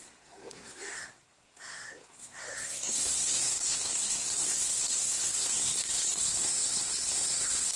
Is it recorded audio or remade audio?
remade